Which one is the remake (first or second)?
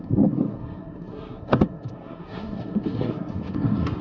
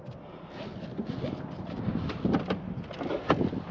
first